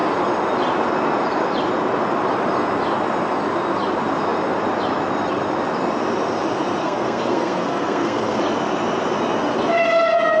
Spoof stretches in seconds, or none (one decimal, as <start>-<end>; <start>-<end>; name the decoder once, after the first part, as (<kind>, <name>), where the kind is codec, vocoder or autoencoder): 6.8-8.4 (codec, SNAC)